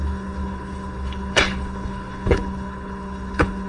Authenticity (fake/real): fake